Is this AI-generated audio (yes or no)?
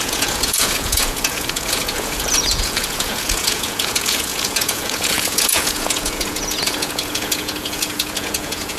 yes